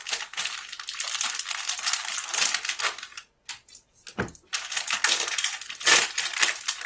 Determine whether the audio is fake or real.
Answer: real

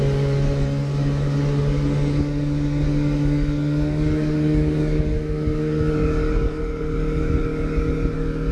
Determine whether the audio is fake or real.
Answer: fake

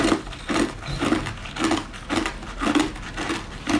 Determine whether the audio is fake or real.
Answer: real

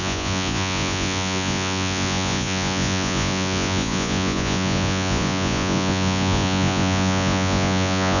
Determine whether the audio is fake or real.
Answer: fake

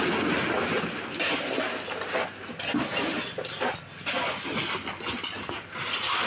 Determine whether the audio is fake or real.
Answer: real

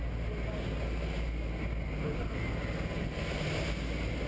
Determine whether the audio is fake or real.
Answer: real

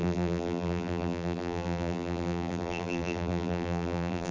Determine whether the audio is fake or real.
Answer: fake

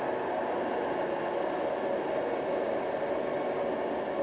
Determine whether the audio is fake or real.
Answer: real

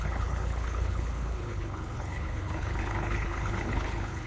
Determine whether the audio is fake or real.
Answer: fake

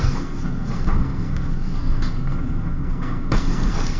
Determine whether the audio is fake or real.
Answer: fake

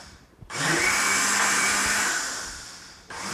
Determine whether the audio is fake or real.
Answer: real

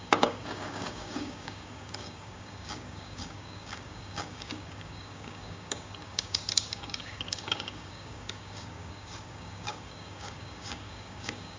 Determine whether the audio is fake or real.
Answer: fake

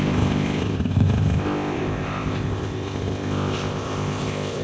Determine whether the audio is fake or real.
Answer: fake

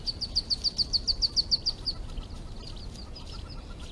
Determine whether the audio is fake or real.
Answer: real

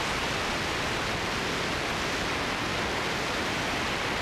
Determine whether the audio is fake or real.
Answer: real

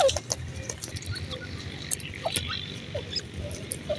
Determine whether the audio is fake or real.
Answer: real